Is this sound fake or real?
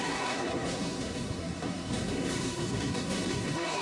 fake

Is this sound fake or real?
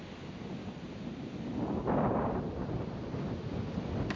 real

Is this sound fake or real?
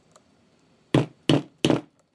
real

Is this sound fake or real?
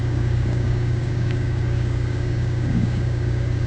fake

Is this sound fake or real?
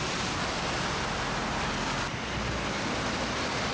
real